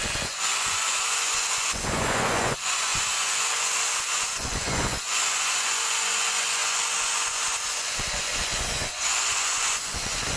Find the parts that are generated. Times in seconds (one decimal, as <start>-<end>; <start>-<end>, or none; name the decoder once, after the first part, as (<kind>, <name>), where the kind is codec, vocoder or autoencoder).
0.0-10.4 (vocoder, Vocos)